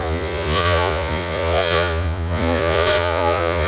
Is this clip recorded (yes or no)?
no